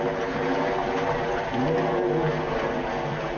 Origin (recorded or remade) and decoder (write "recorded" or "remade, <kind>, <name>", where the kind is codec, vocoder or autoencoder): recorded